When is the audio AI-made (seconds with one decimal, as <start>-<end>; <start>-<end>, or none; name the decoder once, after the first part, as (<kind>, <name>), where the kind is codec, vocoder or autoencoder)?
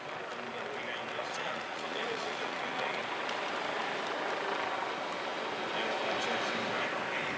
1.2-3.0 (vocoder, Vocos)